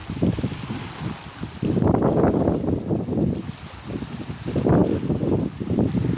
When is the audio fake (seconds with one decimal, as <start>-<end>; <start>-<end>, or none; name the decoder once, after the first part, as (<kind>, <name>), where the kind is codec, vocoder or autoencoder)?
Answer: none